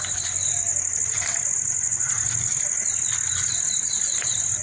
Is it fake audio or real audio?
real